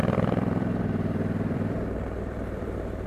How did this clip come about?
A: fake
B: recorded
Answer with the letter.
A